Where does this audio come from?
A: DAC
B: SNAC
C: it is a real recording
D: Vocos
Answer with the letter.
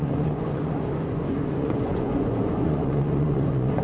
D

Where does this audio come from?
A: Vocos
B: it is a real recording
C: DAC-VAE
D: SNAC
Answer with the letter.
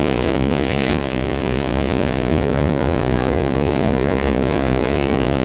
A